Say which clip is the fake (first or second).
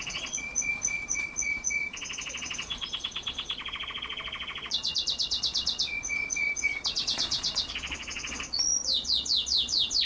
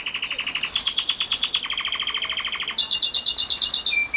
first